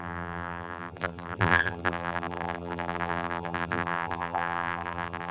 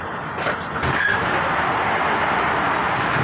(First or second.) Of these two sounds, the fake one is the first